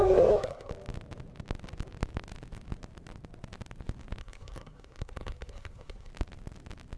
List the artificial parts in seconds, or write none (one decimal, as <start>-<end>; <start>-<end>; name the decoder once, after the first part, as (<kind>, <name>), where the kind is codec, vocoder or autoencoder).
0.0-0.7 (codec, SNAC); 4.2-6.1